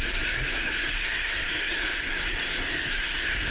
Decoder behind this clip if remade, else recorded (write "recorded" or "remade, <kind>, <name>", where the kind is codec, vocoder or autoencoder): remade, codec, SNAC